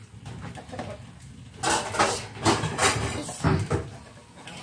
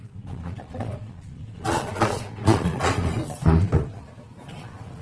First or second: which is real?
first